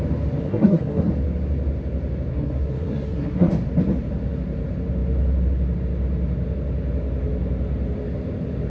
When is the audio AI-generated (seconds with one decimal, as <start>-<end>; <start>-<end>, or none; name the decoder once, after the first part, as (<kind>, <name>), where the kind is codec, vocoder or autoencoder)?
0.4-1.1 (codec, SNAC); 2.3-3.5